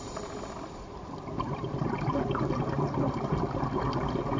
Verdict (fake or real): real